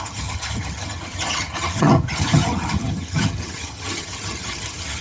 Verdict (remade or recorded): remade